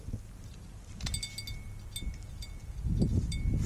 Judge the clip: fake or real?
real